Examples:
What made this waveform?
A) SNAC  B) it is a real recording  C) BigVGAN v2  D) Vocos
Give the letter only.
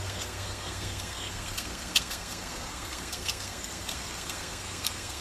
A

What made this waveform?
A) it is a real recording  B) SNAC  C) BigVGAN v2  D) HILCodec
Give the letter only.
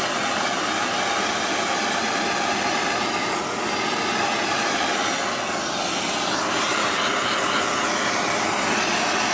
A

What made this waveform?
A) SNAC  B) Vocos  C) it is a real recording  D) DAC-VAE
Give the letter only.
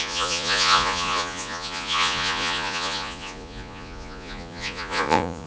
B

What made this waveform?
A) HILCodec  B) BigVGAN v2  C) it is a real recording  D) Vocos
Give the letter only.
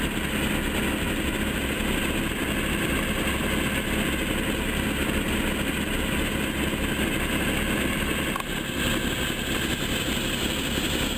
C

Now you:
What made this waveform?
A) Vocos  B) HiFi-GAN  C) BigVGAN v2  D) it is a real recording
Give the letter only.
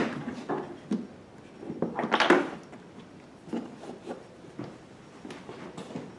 D